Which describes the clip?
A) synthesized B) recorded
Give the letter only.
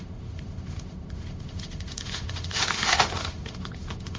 A